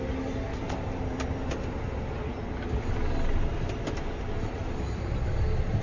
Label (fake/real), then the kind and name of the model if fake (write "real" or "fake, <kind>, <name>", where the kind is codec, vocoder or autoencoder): real